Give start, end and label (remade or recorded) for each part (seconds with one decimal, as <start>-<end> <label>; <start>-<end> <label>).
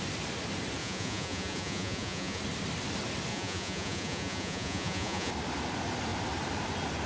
0.0-0.8 recorded; 0.8-2.4 remade; 2.4-3.3 recorded; 3.3-5.3 remade; 5.3-7.1 recorded